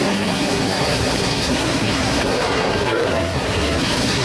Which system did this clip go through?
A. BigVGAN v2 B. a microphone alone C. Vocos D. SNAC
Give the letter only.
D